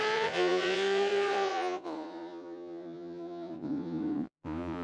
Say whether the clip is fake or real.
fake